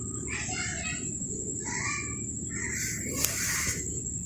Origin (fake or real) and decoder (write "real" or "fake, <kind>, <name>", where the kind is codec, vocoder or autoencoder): real